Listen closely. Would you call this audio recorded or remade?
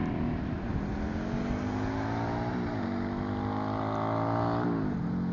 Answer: recorded